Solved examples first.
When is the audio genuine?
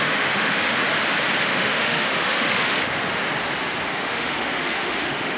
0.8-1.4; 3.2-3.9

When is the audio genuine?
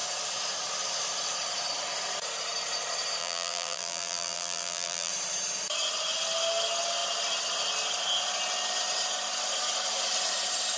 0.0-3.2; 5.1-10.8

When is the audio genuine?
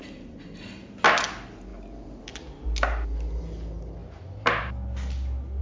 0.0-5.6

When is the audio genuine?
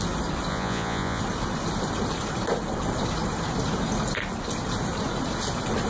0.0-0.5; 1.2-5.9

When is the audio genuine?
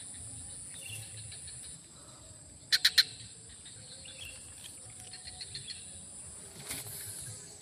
0.0-7.6